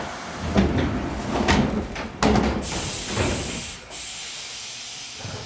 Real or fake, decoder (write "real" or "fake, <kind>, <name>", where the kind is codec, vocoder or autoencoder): real